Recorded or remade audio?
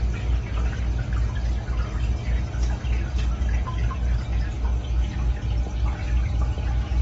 recorded